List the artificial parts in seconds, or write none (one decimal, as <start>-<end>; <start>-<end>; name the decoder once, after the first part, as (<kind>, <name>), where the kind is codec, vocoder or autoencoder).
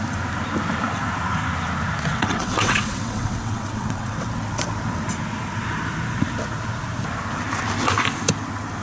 2.1-4.4 (vocoder, WaveNeXt)